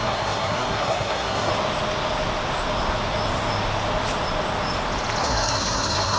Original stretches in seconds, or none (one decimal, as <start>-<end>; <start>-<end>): 1.5-5.2